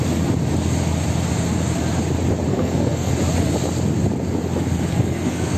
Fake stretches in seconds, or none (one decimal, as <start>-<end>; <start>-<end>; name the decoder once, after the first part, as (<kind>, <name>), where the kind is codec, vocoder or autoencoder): 2.5-3.1 (codec, SNAC); 4.9-5.6